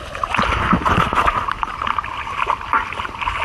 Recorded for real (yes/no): yes